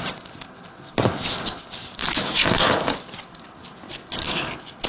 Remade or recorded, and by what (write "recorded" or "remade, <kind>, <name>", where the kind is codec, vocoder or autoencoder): recorded